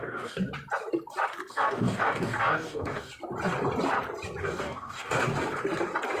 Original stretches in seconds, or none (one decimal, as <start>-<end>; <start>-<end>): 0.4-1.5; 3.1-4.4; 5.3-6.2